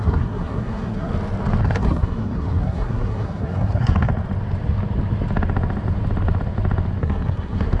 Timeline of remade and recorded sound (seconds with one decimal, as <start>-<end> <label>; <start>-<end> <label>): 0.0-1.1 remade; 1.1-1.6 recorded; 1.6-4.1 remade; 4.1-7.0 recorded; 7.0-7.8 remade